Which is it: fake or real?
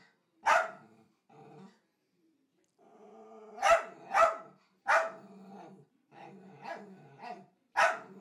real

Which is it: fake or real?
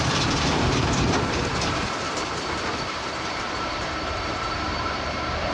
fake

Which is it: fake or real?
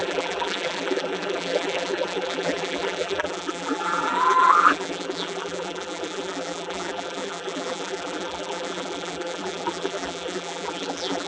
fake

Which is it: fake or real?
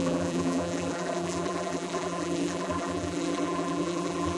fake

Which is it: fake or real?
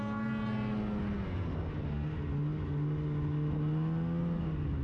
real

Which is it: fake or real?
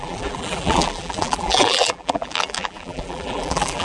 fake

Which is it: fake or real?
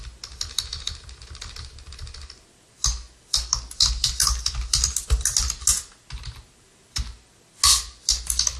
real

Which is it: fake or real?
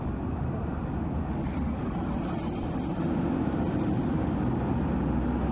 real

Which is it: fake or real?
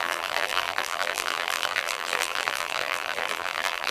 fake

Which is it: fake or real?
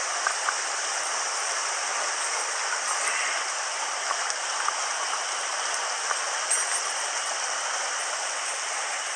real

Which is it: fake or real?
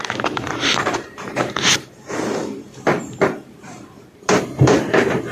fake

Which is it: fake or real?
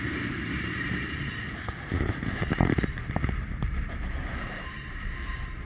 fake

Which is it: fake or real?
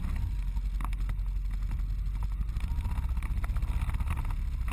real